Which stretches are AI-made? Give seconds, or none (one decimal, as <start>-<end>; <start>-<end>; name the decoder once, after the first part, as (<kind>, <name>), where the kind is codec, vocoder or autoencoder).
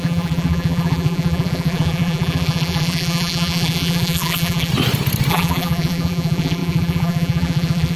0.0-4.7 (vocoder, BigVGAN v2); 5.3-8.0